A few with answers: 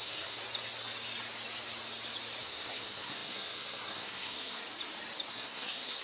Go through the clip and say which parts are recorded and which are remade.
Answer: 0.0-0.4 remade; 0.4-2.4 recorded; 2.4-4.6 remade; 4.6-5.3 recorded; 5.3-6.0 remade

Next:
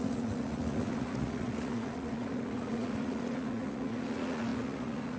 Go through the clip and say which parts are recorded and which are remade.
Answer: 0.0-5.2 remade

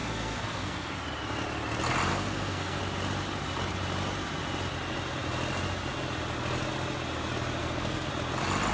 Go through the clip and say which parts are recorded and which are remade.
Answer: 0.0-1.0 remade; 1.0-2.1 recorded; 2.1-2.8 remade; 2.8-7.6 recorded; 7.6-8.1 remade; 8.1-8.7 recorded